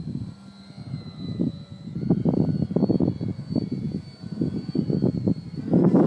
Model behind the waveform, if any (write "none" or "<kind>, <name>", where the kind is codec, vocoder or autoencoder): vocoder, BigVGAN v2